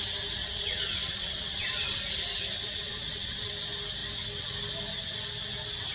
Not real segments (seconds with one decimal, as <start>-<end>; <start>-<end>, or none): 0.4-2.0; 2.6-3.5